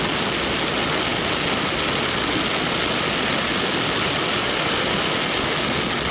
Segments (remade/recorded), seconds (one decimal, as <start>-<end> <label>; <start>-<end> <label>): 0.0-6.1 recorded